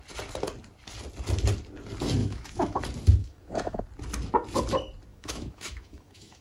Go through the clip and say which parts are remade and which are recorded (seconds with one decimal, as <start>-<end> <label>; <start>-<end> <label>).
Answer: 0.0-2.2 recorded; 2.2-2.8 remade; 2.8-3.2 recorded; 3.2-3.8 remade; 3.8-5.1 recorded; 5.1-6.4 remade